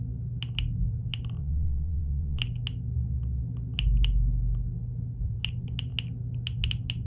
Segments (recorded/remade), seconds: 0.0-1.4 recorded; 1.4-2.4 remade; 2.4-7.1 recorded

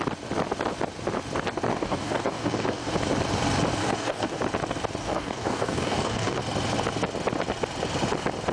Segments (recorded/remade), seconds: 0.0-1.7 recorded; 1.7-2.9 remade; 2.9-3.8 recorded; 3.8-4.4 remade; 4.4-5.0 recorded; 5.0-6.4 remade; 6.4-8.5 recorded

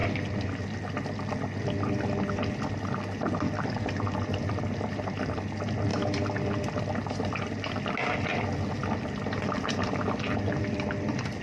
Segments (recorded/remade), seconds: 0.0-11.4 recorded

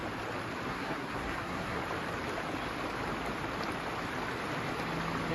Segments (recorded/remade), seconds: 0.0-0.7 recorded; 0.7-1.8 remade; 1.8-5.3 recorded